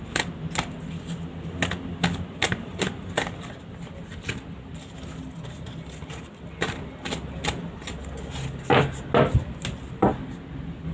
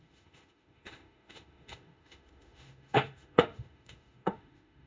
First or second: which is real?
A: first